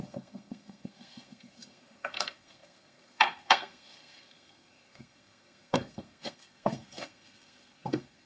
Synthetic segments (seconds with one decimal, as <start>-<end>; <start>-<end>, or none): 0.0-8.3